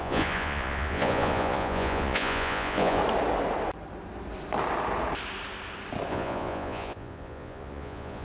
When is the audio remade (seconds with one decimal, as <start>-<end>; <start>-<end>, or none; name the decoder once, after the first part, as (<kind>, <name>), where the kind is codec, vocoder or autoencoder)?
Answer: 0.0-3.0 (vocoder, Vocos); 6.1-8.2